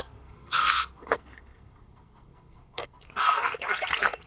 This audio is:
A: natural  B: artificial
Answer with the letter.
B